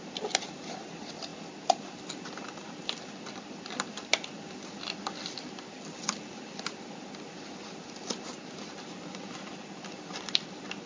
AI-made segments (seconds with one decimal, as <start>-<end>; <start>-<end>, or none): none